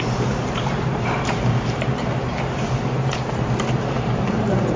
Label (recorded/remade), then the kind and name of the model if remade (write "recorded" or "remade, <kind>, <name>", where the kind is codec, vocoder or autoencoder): remade, vocoder, BigVGAN v2